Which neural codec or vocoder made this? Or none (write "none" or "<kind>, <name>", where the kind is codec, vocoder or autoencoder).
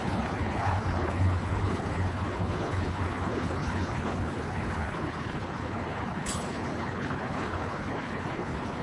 codec, HILCodec